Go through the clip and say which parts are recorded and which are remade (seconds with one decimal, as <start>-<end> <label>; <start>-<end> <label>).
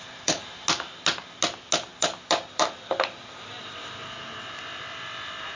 0.0-1.9 recorded; 1.9-5.6 remade